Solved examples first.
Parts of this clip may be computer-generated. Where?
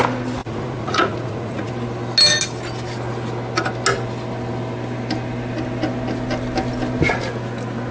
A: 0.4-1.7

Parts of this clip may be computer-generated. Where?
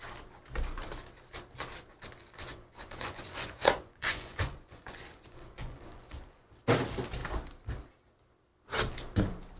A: 2.2-6.5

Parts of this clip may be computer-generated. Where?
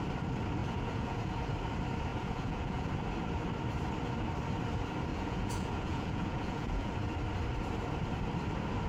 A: 0.6-1.4; 2.1-2.9; 5.1-6.9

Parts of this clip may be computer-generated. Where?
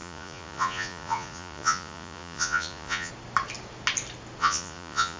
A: 0.0-3.1; 4.4-5.2